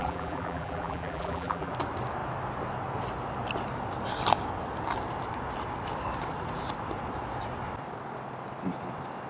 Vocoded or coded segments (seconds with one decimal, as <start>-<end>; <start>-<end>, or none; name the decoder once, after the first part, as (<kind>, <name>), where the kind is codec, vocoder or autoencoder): 0.0-1.7 (vocoder, BigVGAN v2)